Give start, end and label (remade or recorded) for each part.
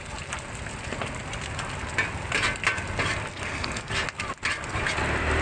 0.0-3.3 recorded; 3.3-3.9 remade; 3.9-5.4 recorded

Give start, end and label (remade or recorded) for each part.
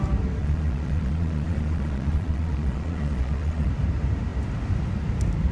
0.0-0.4 recorded; 0.4-3.7 remade; 3.7-5.5 recorded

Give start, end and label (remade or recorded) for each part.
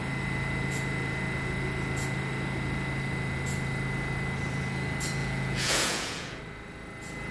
0.0-5.2 recorded; 5.2-6.4 remade; 6.4-7.3 recorded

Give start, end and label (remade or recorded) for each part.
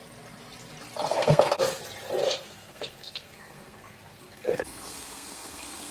0.0-1.1 recorded; 1.1-1.8 remade; 1.8-2.2 recorded; 2.2-5.9 remade